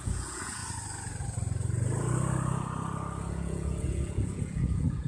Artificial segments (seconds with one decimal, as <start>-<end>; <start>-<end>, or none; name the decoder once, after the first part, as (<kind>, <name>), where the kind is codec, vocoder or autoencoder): 0.0-0.6 (vocoder, Vocos); 3.3-5.1